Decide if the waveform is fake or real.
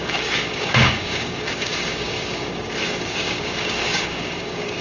fake